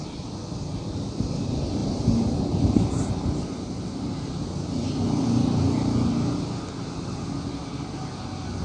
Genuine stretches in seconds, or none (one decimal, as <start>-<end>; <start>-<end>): 0.0-8.6